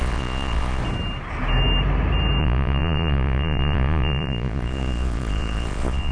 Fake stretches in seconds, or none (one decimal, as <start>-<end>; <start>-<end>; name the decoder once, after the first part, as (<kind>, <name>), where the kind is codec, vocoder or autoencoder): 0.0-0.8 (vocoder, Vocos); 2.4-6.1